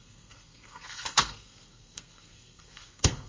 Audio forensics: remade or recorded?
remade